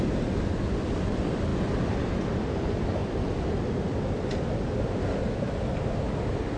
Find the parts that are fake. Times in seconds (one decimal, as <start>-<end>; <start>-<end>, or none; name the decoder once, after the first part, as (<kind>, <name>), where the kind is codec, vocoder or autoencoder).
none

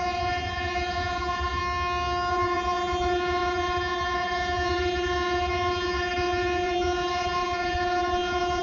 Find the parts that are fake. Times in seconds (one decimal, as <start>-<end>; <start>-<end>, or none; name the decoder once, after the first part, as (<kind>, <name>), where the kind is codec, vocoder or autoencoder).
0.0-1.6 (vocoder, Vocos); 2.3-8.6

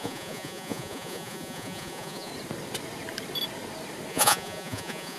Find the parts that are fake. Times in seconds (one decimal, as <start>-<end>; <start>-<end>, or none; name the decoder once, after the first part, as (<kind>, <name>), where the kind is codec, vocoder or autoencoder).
0.0-2.3 (vocoder, Vocos); 4.1-5.2

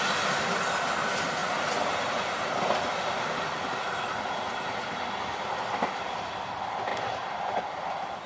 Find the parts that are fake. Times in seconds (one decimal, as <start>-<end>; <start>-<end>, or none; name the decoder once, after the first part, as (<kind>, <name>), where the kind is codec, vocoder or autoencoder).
none

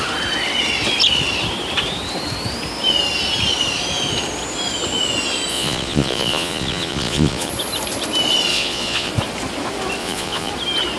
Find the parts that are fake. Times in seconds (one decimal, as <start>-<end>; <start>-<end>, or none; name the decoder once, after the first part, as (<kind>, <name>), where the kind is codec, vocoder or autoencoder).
5.5-7.5 (vocoder, Vocos); 8.5-9.1; 10.0-10.5